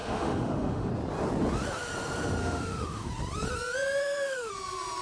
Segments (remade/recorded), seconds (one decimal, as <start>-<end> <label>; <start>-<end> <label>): 0.0-0.9 remade; 0.9-2.4 recorded; 2.4-3.1 remade; 3.1-4.0 recorded; 4.0-4.5 remade; 4.5-5.0 recorded